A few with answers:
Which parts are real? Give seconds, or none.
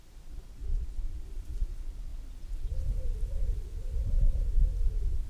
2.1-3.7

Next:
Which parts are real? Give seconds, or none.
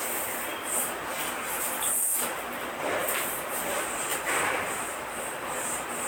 0.0-3.0; 3.6-4.1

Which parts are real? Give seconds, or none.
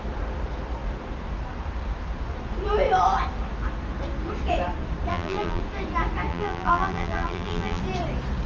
0.0-5.1; 5.6-6.3; 7.8-8.5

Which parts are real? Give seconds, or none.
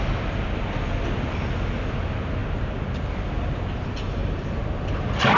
0.0-2.4; 2.9-4.2; 4.9-5.4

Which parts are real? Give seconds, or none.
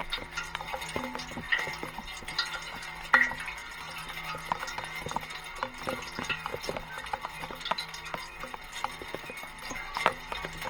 0.8-6.5; 7.4-10.7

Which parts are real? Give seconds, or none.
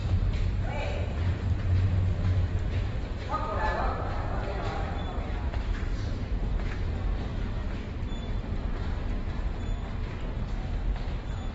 1.2-4.3; 6.5-11.5